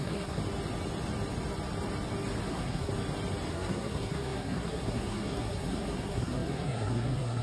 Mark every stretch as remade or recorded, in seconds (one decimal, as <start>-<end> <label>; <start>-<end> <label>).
0.0-0.4 remade; 0.4-2.5 recorded; 2.5-2.9 remade; 2.9-3.5 recorded; 3.5-7.4 remade

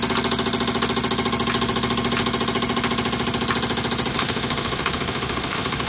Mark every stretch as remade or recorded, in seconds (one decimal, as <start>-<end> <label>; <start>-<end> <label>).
0.0-4.1 recorded; 4.1-5.9 remade

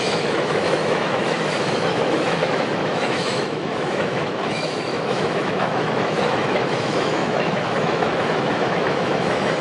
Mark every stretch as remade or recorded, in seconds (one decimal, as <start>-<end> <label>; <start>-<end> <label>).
0.0-9.6 remade

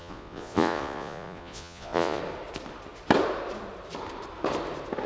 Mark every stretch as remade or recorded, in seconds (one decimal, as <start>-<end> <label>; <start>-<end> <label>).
0.0-2.2 remade; 2.2-5.1 recorded

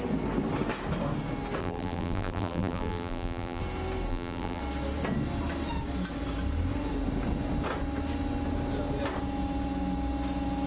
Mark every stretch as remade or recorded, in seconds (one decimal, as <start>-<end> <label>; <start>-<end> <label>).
0.0-1.6 recorded; 1.6-3.6 remade; 3.6-4.1 recorded; 4.1-4.6 remade; 4.6-10.7 recorded